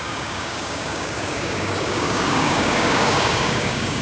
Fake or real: fake